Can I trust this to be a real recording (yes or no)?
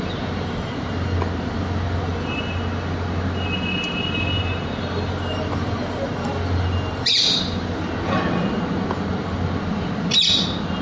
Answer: yes